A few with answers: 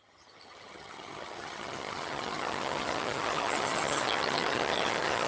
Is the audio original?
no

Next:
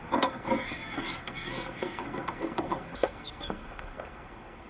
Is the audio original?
no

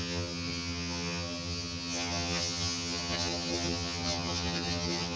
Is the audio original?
no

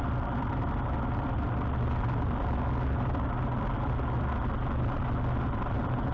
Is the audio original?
yes